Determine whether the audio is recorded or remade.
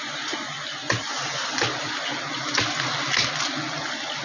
recorded